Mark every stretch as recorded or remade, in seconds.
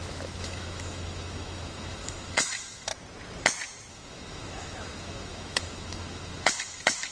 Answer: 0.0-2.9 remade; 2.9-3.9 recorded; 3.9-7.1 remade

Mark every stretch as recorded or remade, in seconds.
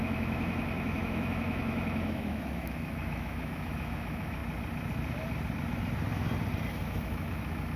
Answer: 0.0-4.4 remade; 4.4-6.7 recorded; 6.7-7.8 remade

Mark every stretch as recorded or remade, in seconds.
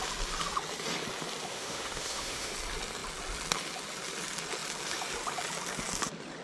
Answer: 0.0-1.5 recorded; 1.5-2.5 remade; 2.5-6.4 recorded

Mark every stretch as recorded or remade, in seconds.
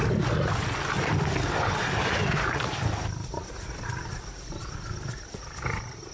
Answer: 0.0-6.1 recorded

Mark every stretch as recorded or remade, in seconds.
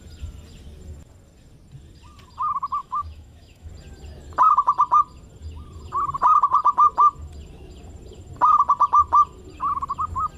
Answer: 0.0-2.8 recorded; 2.8-3.7 remade; 3.7-10.4 recorded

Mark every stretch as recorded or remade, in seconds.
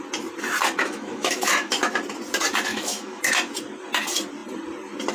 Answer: 0.0-0.8 recorded; 0.8-1.7 remade; 1.7-2.7 recorded; 2.7-3.2 remade; 3.2-5.1 recorded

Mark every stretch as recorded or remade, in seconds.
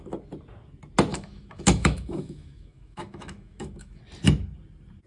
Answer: 0.0-1.1 recorded; 1.1-4.0 remade; 4.0-5.1 recorded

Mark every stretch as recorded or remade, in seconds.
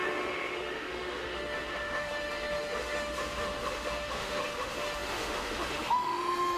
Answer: 0.0-6.6 remade